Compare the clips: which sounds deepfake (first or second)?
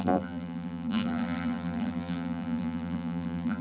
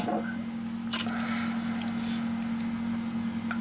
first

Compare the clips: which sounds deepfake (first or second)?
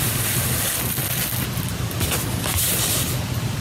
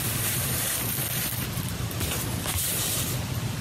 second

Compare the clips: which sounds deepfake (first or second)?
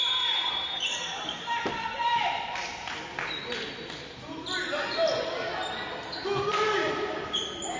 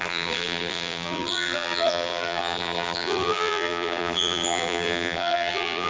second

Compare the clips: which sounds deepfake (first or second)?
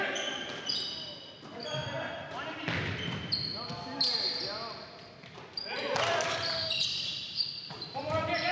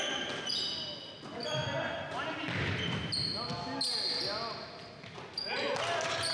first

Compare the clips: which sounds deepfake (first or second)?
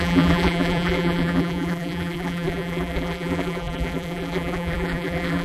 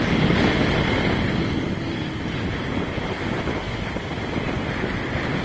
first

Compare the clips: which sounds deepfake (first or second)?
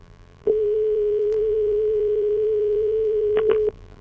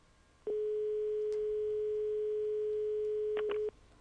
first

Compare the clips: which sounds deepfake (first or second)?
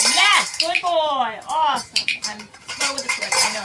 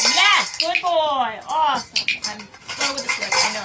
first